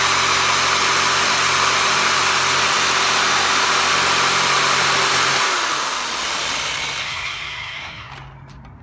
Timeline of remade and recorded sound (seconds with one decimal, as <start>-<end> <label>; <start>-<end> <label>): 0.0-7.0 recorded; 7.0-8.1 remade; 8.1-8.8 recorded